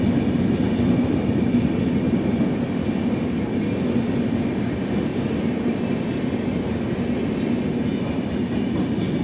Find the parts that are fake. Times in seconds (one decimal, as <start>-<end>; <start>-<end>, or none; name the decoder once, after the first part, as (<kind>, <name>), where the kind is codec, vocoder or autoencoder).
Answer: 5.1-5.8 (vocoder, BigVGAN v2)